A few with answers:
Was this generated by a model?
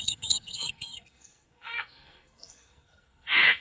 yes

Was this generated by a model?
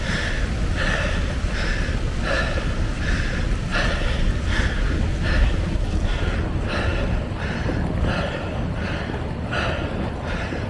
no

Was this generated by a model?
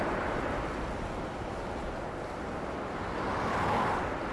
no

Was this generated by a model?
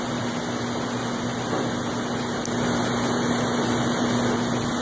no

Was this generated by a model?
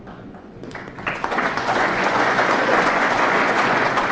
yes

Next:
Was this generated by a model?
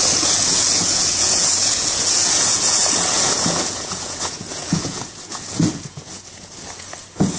yes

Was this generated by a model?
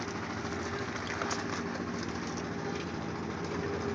no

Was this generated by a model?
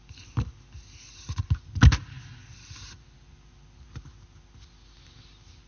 no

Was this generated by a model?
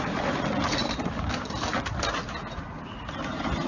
no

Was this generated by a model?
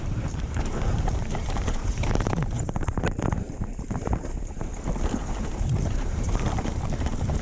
yes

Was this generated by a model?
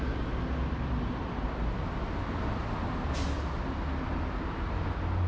no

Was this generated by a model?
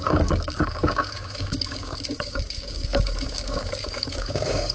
yes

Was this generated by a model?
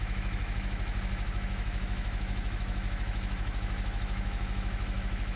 yes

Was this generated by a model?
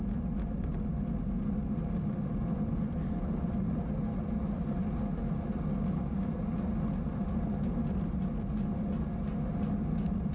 no